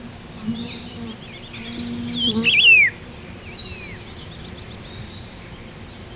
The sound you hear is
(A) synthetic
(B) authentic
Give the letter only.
B